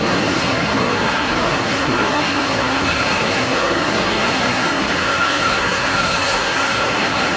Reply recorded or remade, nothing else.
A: remade